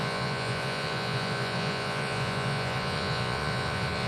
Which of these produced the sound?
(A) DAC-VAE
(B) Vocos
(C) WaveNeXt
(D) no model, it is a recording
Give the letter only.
B